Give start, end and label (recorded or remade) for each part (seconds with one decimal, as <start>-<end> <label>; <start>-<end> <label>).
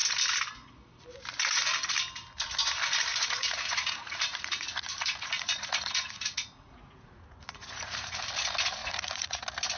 0.0-3.1 recorded; 3.1-8.2 remade; 8.2-8.8 recorded; 8.8-9.4 remade; 9.4-9.8 recorded